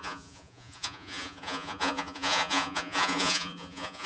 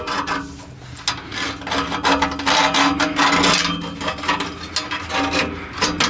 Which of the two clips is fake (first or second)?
first